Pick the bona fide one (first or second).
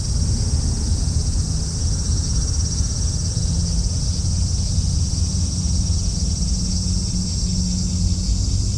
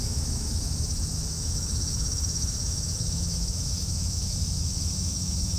first